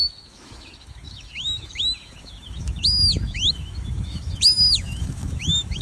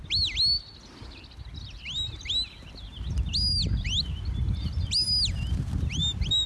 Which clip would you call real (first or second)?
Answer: second